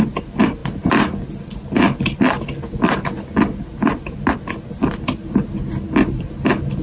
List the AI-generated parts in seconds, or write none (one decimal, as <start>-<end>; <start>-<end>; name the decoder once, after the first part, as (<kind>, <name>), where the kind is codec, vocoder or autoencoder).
none